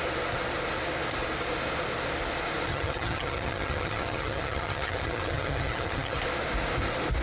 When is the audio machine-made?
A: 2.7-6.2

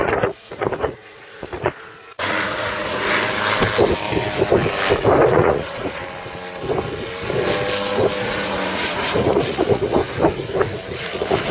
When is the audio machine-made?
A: 0.0-3.2; 5.3-6.0; 8.2-10.0; 10.9-11.5